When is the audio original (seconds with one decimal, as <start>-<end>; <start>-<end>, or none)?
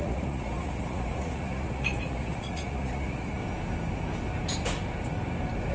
3.4-5.7